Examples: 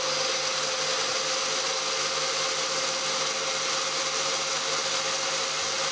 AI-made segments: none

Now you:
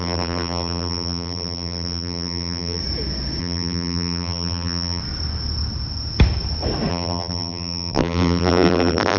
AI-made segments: 0.0-2.8 (vocoder, BigVGAN v2); 3.4-5.0; 6.9-9.2

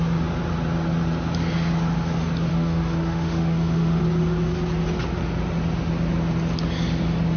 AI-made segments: 2.5-4.0 (autoencoder, DAC-VAE)

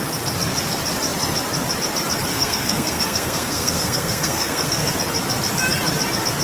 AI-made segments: 2.3-4.9 (codec, SNAC)

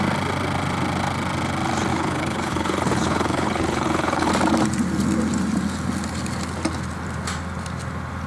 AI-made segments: 1.9-4.3 (codec, HILCodec)

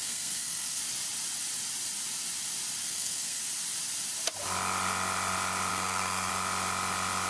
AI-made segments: 0.0-0.8 (codec, SNAC); 2.8-3.4; 5.7-6.3

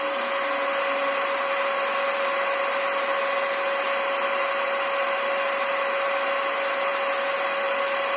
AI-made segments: none